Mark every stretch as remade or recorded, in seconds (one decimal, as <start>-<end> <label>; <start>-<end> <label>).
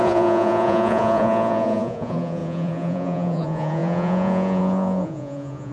0.0-5.7 remade